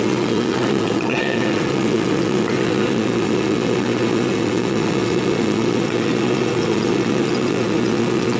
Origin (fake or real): fake